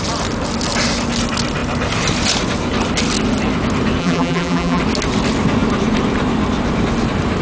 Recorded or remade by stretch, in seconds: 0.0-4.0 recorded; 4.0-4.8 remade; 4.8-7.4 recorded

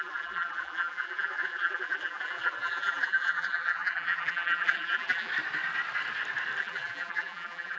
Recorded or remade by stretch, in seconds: 0.0-5.3 remade; 5.3-6.6 recorded; 6.6-7.8 remade

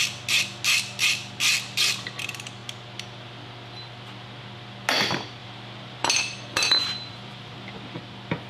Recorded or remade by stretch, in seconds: 0.0-5.4 recorded; 5.4-8.0 remade; 8.0-8.5 recorded